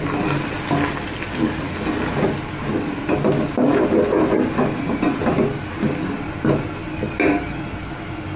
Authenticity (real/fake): real